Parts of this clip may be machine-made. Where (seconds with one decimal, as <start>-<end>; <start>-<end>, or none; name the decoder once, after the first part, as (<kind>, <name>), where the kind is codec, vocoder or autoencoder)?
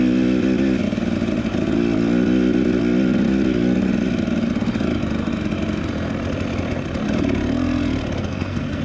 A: 8.2-8.8 (codec, SNAC)